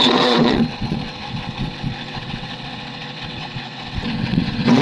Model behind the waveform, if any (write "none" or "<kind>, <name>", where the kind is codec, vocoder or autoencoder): vocoder, WaveNeXt